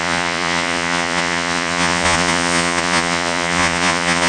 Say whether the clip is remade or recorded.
remade